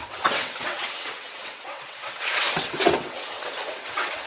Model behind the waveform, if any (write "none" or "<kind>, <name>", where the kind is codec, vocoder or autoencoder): vocoder, WaveNeXt